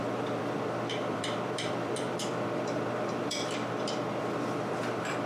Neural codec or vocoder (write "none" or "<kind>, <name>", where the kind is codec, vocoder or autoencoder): vocoder, BigVGAN v2